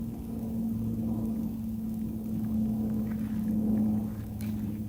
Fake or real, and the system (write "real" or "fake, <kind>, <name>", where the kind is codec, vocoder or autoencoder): fake, codec, DAC